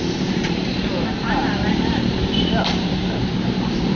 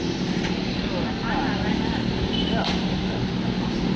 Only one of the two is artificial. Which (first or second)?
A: first